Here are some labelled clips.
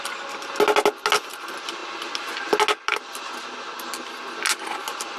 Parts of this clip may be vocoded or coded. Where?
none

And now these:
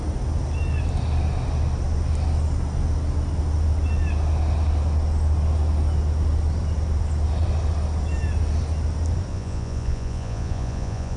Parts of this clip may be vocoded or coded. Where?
9.3-11.2 (vocoder, Vocos)

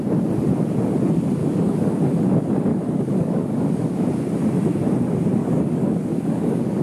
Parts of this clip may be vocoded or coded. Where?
1.4-2.2 (codec, DAC); 2.7-4.1; 5.4-6.8

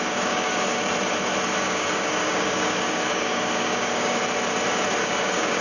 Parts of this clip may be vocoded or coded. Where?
0.0-0.8 (codec, DAC); 1.6-4.2; 5.0-5.6